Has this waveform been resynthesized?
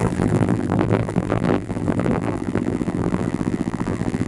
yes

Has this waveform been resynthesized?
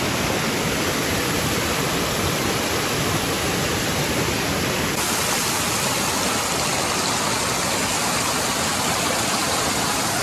no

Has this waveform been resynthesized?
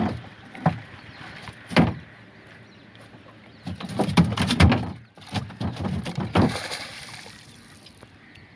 yes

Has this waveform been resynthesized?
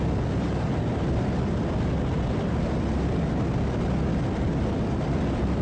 no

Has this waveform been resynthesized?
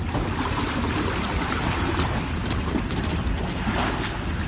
no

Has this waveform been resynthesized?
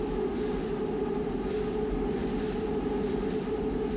no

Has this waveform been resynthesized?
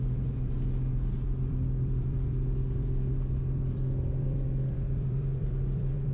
yes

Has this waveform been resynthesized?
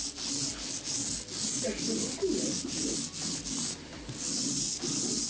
no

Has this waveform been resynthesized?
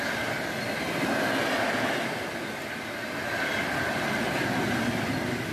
no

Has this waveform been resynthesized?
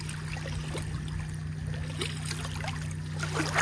no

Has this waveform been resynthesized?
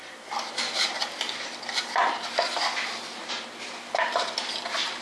yes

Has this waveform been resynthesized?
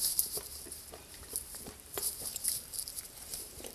yes